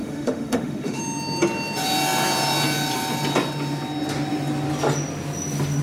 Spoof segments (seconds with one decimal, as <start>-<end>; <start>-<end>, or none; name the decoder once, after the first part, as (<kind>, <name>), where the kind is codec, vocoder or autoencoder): 0.0-1.0 (autoencoder, DAC-VAE)